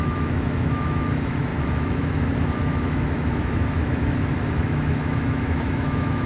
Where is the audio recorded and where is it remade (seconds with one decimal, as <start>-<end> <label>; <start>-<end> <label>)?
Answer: 0.0-6.3 remade